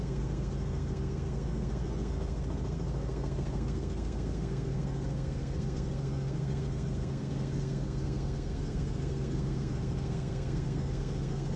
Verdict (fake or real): fake